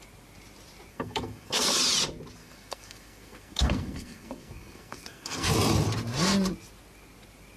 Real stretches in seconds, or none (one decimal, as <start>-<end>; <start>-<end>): 0.0-0.9; 1.8-2.4; 5.5-7.6